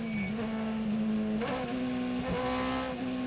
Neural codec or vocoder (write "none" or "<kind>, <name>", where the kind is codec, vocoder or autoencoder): none